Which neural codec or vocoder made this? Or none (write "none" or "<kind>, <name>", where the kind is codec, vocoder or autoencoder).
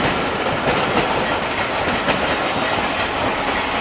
none